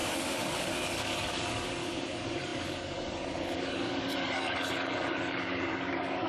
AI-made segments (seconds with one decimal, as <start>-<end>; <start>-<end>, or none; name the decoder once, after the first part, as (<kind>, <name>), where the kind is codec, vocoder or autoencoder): 0.0-6.3 (codec, DAC)